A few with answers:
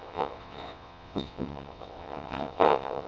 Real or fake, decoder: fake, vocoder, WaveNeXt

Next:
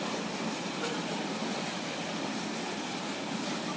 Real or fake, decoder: real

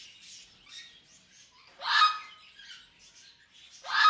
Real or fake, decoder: real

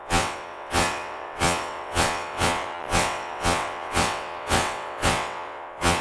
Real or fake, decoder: fake, vocoder, WaveNeXt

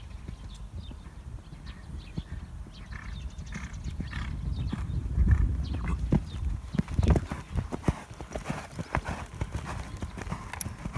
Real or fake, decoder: real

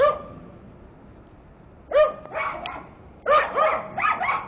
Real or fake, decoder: real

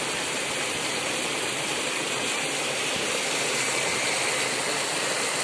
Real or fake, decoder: real